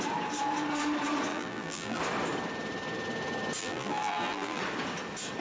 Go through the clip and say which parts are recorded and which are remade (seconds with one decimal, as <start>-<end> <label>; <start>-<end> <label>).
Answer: 0.0-1.3 recorded; 1.3-2.0 remade; 2.0-3.6 recorded; 3.6-4.6 remade; 4.6-5.4 recorded